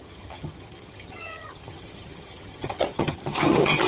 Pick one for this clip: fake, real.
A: fake